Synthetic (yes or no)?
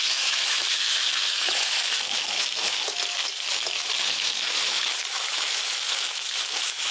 yes